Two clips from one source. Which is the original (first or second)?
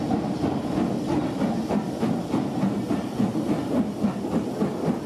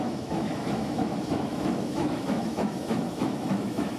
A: first